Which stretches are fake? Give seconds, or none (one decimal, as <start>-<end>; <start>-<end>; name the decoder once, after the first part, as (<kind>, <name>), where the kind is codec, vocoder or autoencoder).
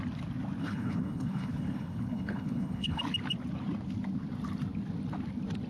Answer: 0.6-3.0 (codec, HILCodec)